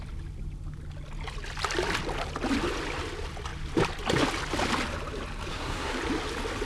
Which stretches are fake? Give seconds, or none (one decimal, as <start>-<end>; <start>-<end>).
5.5-6.0